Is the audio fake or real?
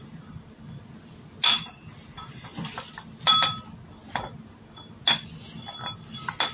real